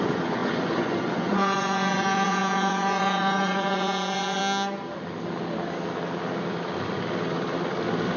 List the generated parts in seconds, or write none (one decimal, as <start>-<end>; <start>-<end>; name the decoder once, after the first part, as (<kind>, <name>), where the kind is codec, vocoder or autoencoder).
0.0-4.4 (vocoder, Vocos)